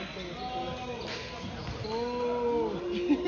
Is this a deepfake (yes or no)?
no